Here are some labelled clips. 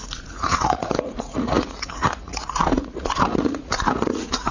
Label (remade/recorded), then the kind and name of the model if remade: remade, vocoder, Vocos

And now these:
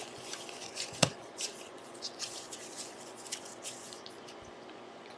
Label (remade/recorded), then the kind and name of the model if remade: remade, vocoder, Vocos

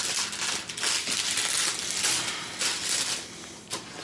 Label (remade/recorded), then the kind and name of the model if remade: recorded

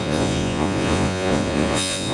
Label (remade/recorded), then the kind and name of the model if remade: remade, vocoder, Vocos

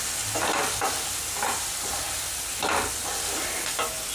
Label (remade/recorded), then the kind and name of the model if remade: recorded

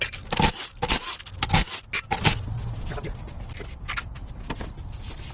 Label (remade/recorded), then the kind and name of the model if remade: recorded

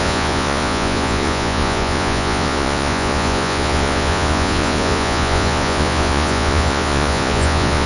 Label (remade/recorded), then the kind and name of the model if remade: remade, vocoder, Vocos